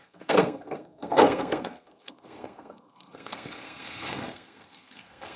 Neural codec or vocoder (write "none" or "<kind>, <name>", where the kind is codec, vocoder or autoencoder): codec, SNAC